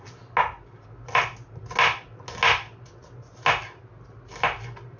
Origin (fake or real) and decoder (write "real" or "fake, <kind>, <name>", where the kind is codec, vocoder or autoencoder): real